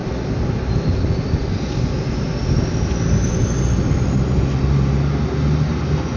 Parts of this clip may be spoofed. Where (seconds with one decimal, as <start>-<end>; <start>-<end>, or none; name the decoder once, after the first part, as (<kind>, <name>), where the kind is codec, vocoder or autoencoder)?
none

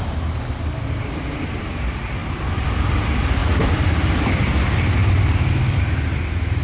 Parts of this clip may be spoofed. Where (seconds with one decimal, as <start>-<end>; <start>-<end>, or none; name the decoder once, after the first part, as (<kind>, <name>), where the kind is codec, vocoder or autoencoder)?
1.0-1.6 (vocoder, BigVGAN v2); 2.2-3.0; 3.4-4.4; 5.0-5.8

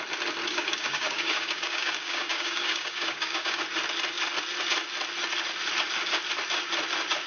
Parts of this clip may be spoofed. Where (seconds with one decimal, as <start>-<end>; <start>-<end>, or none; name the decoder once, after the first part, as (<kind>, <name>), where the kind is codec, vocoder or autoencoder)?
0.5-3.6 (codec, DAC)

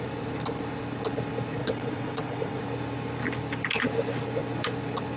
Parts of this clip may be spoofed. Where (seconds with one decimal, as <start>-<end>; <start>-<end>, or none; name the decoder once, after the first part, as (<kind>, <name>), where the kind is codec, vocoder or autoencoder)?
1.6-2.6 (vocoder, WaveNeXt)

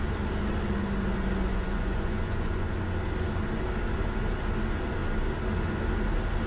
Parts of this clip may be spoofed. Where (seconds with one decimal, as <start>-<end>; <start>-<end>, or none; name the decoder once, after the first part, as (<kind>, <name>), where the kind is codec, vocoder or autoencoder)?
1.5-2.7 (vocoder, Vocos)